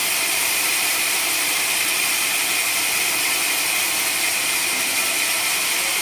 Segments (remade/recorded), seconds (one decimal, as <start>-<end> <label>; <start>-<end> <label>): 0.0-2.0 remade; 2.0-6.0 recorded